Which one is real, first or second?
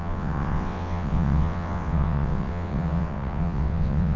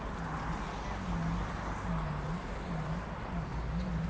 second